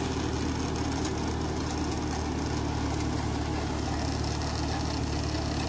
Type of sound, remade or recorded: recorded